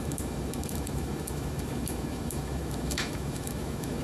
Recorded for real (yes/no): no